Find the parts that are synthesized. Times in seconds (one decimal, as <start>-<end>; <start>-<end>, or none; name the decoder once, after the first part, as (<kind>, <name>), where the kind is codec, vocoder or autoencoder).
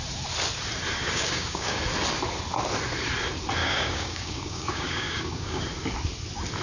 1.0-1.8 (codec, DAC); 3.6-5.6